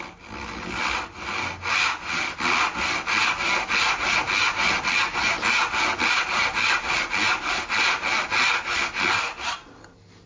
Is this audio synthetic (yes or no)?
no